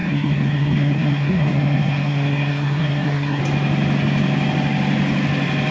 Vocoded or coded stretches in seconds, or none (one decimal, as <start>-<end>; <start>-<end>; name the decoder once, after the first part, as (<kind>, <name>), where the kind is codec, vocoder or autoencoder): 0.0-3.4 (codec, SNAC)